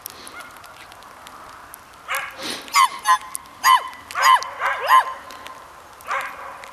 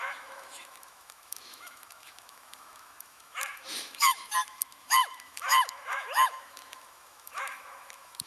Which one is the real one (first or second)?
first